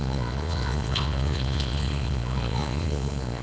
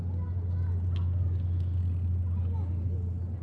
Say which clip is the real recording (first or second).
second